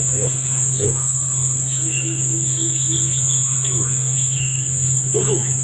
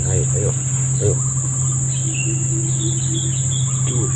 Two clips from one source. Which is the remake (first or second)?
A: first